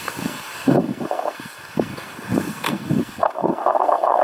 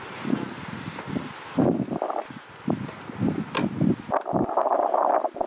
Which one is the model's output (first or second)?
first